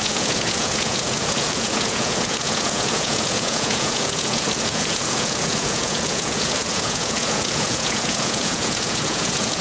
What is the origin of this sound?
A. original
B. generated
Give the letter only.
B